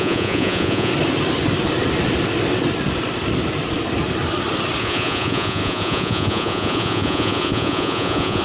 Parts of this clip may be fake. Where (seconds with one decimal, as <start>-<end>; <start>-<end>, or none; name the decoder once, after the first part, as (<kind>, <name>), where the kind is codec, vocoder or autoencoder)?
0.0-0.9 (vocoder, Vocos); 4.8-8.4